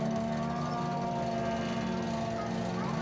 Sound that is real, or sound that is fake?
real